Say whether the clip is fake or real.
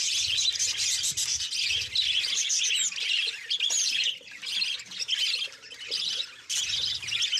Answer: real